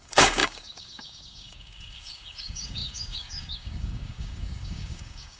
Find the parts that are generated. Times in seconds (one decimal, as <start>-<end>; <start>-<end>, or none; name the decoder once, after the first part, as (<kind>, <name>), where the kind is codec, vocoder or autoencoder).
0.0-5.4 (codec, DAC)